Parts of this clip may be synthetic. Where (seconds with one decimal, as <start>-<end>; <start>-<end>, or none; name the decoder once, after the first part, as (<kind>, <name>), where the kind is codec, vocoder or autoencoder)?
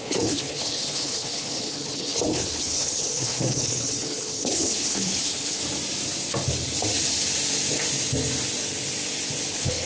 0.0-5.6 (codec, HILCodec); 9.5-9.9